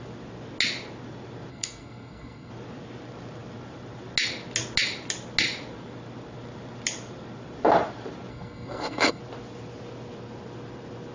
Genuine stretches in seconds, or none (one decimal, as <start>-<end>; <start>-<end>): 0.0-1.5; 2.5-8.3; 9.2-11.1